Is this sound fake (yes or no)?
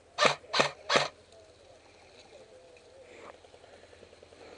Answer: no